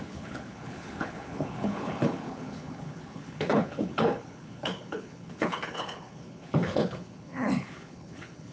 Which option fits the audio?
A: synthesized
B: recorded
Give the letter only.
A